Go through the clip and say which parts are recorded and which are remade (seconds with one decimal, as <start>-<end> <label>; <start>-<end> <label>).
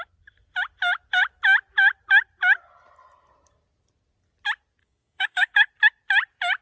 0.0-4.8 recorded; 4.8-5.7 remade; 5.7-6.6 recorded